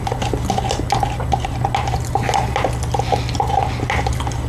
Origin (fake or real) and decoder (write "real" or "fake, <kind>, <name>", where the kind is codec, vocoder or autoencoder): real